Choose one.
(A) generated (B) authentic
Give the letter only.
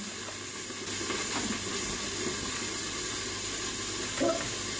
B